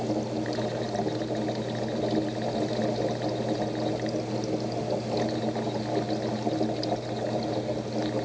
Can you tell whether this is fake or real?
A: real